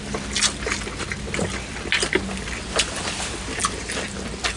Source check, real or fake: real